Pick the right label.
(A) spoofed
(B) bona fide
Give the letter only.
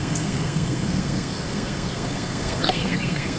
A